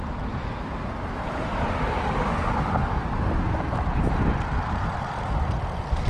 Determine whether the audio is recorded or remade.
recorded